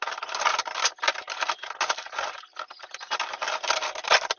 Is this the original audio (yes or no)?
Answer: yes